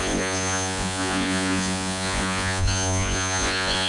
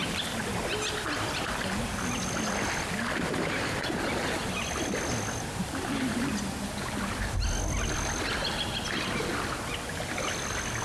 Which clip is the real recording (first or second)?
second